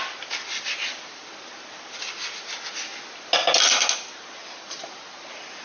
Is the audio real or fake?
real